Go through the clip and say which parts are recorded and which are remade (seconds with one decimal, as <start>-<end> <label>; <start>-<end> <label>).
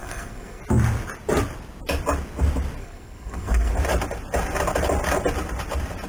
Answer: 0.0-0.6 remade; 0.6-2.8 recorded; 2.8-3.7 remade; 3.7-6.1 recorded